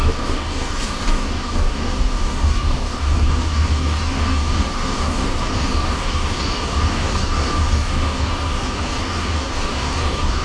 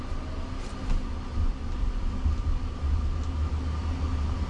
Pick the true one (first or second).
second